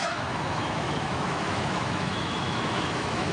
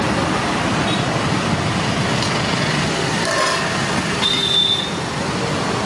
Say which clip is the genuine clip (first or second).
second